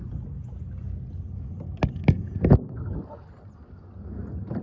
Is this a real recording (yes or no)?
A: yes